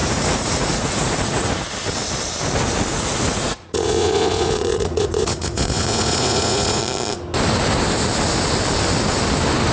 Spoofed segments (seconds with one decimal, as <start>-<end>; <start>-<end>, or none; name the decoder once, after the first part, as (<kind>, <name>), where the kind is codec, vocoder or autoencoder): 0.0-1.5 (vocoder, Vocos); 2.9-6.8